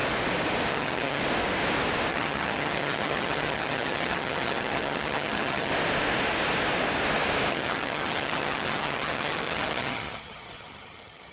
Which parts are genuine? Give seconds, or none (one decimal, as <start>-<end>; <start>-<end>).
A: 0.0-0.7; 1.2-2.1; 5.7-7.5